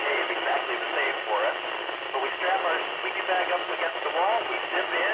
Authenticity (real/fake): real